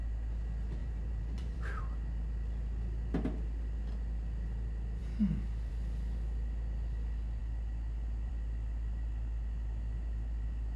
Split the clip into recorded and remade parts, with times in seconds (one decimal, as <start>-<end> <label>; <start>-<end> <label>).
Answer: 0.0-0.8 recorded; 0.8-1.8 remade; 1.8-10.8 recorded